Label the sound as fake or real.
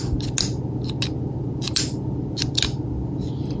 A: real